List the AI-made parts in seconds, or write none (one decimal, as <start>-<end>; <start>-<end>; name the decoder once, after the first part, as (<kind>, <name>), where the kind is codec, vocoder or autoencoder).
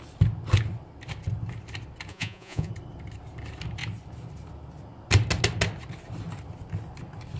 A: 2.1-2.7 (vocoder, Vocos)